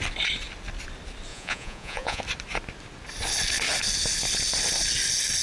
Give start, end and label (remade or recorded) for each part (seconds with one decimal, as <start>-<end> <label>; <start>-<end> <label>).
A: 0.0-1.3 recorded; 1.3-2.2 remade; 2.2-5.4 recorded